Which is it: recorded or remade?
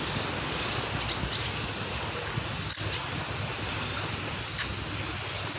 recorded